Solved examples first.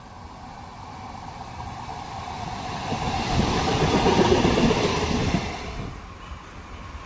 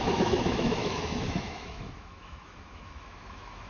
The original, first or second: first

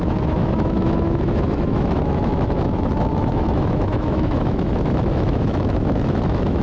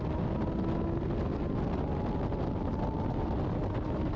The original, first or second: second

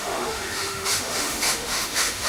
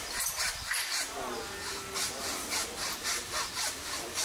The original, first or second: second